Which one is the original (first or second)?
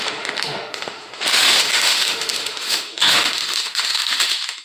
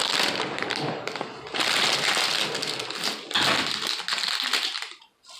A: second